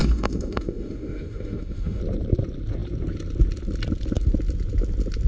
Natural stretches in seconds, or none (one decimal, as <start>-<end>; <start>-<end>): 2.0-5.3